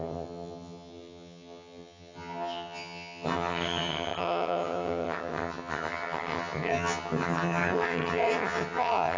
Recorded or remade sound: remade